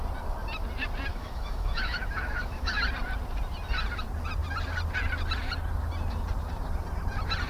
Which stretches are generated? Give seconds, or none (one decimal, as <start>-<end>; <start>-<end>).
1.1-2.8